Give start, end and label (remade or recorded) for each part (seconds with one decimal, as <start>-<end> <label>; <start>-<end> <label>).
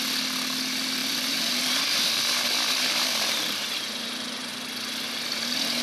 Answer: 0.0-1.0 recorded; 1.0-4.5 remade; 4.5-5.8 recorded